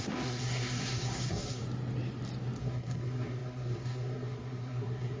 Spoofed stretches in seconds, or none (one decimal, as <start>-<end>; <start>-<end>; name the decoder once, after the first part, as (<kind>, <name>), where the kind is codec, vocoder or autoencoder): 0.0-1.6 (codec, SNAC); 2.6-5.2